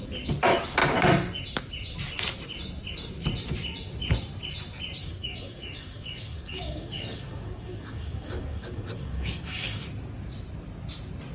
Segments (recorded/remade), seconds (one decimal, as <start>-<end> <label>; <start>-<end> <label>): 0.0-5.0 recorded; 5.0-9.8 remade; 9.8-11.3 recorded